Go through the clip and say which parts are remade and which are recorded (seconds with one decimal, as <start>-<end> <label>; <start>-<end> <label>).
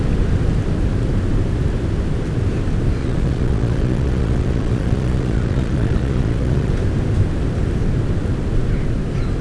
0.0-3.0 recorded; 3.0-6.7 remade; 6.7-9.4 recorded